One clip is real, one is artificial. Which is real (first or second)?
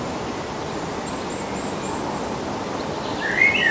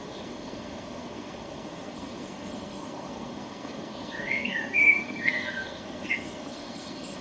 first